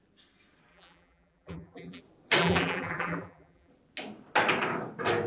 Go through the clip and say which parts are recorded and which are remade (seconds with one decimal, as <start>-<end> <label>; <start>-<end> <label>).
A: 0.0-0.7 recorded; 0.7-2.0 remade; 2.0-2.4 recorded; 2.4-3.7 remade; 3.7-5.3 recorded